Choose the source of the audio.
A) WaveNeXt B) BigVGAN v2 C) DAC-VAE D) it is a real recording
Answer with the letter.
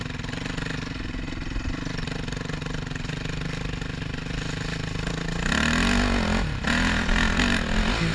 D